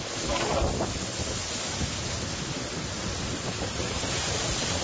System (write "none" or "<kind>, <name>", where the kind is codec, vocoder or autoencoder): none